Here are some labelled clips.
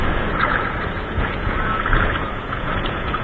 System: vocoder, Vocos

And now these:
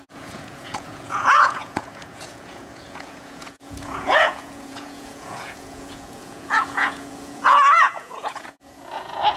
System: vocoder, Vocos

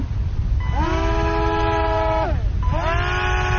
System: none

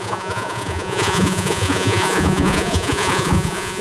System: vocoder, Vocos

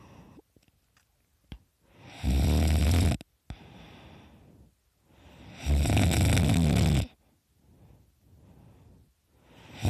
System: none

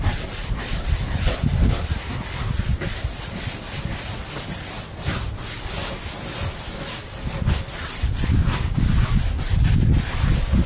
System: none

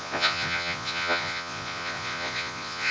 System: vocoder, Vocos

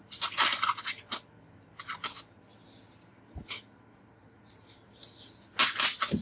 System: none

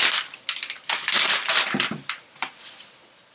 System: none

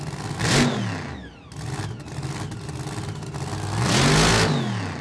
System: none